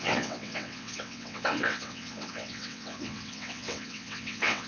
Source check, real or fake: fake